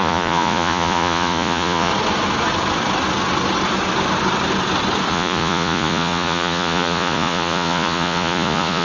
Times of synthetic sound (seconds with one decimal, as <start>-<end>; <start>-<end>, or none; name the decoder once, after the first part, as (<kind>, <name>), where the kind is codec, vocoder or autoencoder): 0.0-1.9 (vocoder, Vocos); 5.1-8.8